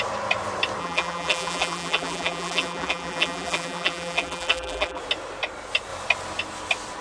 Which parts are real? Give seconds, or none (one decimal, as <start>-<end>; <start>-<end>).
0.0-0.8; 5.0-7.0